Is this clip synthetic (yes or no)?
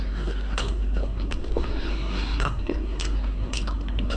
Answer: yes